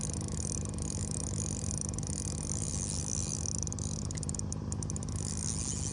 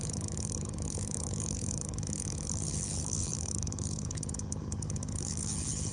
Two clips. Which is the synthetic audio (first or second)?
second